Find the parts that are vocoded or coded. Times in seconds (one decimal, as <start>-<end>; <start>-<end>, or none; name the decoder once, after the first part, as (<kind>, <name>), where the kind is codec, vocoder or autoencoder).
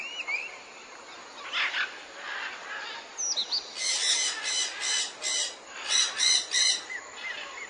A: none